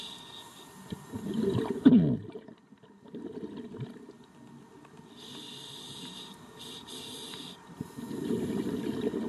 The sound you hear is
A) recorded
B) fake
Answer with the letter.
A